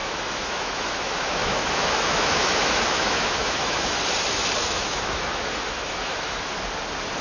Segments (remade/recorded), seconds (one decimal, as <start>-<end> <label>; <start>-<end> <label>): 0.0-4.0 remade; 4.0-4.6 recorded; 4.6-6.5 remade; 6.5-7.2 recorded